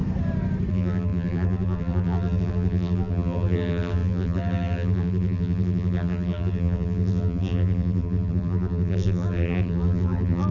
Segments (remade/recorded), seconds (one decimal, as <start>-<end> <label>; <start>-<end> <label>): 0.0-0.7 recorded; 0.7-10.5 remade